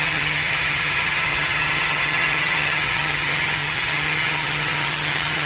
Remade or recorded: remade